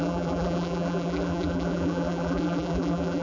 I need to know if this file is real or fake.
fake